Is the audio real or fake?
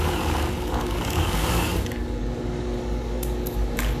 fake